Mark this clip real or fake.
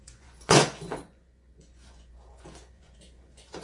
fake